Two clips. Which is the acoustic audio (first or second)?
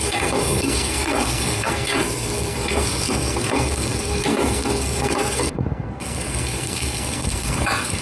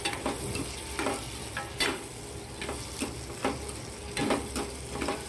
second